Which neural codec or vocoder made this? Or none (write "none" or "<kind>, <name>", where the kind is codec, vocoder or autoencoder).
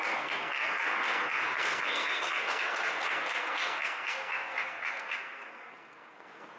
codec, SNAC